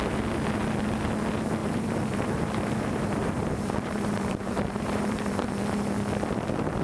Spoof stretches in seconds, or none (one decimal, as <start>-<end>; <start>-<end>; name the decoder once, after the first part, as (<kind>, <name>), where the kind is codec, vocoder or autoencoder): 1.6-5.2 (vocoder, BigVGAN v2)